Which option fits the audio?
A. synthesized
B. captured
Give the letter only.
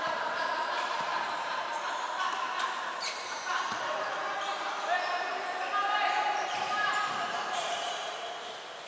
A